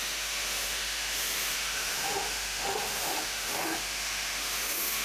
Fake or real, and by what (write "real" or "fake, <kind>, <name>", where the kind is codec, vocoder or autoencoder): fake, autoencoder, DAC-VAE